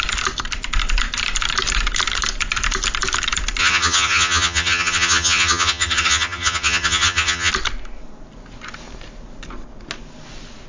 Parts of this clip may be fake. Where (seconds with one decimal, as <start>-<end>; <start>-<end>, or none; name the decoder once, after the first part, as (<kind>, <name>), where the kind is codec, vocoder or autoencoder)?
3.6-7.5 (vocoder, HiFi-GAN)